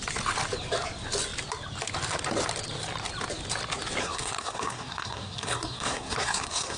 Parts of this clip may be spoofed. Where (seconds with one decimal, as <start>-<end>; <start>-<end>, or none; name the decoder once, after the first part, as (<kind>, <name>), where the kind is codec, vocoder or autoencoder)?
4.0-6.8 (codec, SNAC)